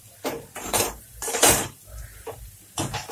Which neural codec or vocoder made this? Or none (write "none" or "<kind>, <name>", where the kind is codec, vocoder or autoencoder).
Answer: vocoder, BigVGAN v2